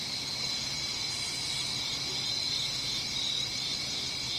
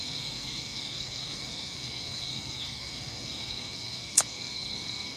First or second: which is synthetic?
second